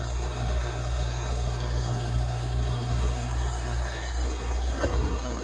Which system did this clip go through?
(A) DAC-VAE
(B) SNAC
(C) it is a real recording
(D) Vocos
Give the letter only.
B